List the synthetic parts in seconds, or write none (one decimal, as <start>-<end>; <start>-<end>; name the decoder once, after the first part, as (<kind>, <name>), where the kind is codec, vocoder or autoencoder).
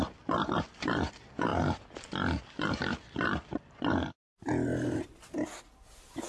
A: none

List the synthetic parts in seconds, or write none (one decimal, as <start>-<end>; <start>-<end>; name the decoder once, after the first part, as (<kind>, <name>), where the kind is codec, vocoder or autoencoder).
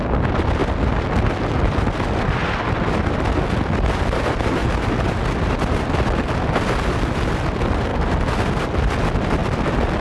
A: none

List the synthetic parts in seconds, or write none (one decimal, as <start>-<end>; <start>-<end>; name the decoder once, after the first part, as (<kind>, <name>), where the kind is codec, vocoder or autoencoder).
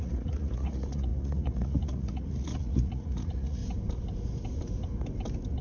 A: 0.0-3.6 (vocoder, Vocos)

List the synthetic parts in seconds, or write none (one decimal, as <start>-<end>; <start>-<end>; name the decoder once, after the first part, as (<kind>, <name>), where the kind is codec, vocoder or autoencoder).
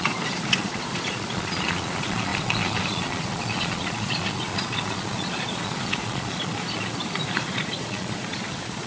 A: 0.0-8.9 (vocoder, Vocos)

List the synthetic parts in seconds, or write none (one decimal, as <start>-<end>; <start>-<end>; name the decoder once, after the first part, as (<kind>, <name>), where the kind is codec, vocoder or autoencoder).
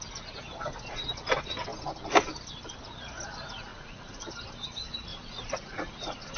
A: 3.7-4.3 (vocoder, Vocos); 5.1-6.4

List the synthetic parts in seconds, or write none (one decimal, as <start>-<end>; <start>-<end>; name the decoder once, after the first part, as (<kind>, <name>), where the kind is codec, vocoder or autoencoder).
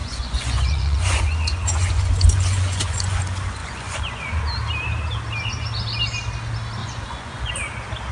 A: 0.0-3.2 (vocoder, Vocos); 3.6-4.4; 6.8-7.5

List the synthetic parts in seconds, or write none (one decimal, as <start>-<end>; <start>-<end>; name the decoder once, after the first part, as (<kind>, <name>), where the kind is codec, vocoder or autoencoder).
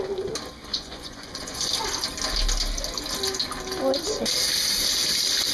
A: 0.7-1.7 (vocoder, Vocos)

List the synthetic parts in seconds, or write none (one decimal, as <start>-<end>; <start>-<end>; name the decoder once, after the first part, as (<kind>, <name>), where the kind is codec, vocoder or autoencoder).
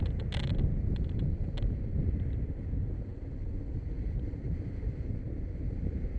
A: none